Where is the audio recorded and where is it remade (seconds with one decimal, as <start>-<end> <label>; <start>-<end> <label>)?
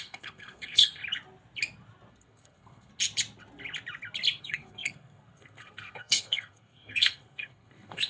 0.0-1.0 remade; 1.0-2.1 recorded; 2.1-2.9 remade; 2.9-4.4 recorded; 4.4-8.1 remade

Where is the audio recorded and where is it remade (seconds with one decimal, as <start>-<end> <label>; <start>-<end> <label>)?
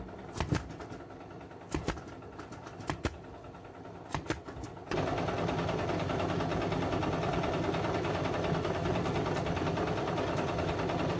0.0-11.2 recorded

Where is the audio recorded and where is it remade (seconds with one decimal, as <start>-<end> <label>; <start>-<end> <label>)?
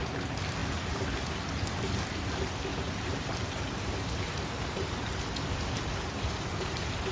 0.0-2.7 recorded; 2.7-7.1 remade